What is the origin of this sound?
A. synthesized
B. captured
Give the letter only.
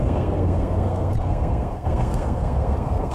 A